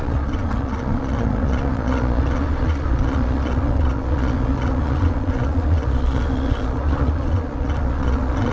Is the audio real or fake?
fake